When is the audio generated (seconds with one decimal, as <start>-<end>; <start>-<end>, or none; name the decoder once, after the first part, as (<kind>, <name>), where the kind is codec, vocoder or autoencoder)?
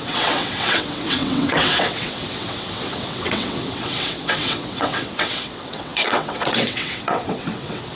0.0-8.0 (vocoder, WaveNeXt)